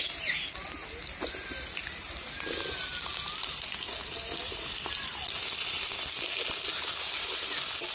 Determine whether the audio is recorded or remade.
recorded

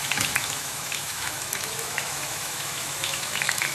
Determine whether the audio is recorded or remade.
remade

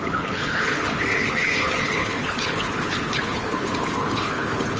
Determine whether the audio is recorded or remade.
remade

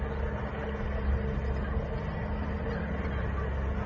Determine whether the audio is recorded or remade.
recorded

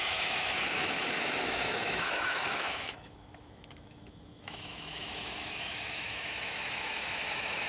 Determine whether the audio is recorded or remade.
remade